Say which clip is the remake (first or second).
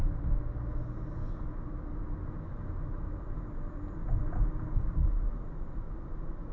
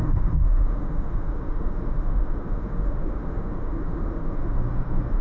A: second